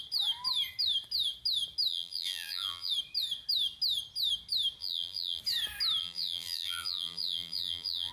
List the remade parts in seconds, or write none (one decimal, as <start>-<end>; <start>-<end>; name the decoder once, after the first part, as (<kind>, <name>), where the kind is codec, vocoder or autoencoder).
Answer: 1.9-2.9 (vocoder, BigVGAN v2); 4.8-5.4; 6.0-8.1